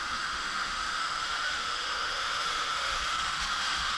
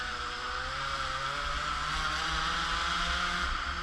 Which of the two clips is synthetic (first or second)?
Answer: first